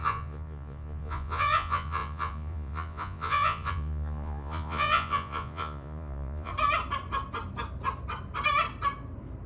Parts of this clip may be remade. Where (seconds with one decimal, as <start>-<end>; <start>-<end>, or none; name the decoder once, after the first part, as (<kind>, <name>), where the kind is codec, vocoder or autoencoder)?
0.0-6.5 (vocoder, Vocos)